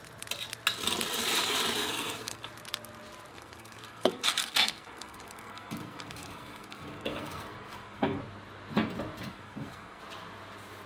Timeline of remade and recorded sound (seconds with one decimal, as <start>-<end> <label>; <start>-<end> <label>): 0.0-1.8 recorded; 1.8-2.5 remade; 2.5-3.3 recorded; 3.3-8.2 remade; 8.2-9.3 recorded; 9.3-10.0 remade; 10.0-10.9 recorded